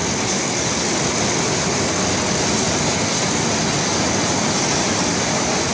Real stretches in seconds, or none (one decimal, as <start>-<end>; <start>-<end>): 0.0-5.7